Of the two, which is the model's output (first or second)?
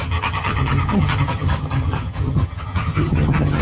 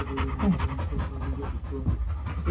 first